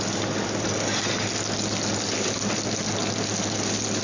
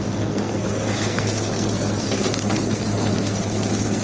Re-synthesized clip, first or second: second